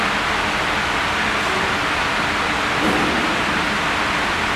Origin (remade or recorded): remade